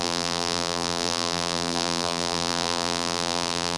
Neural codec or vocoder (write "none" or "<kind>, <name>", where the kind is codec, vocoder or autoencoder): vocoder, BigVGAN v2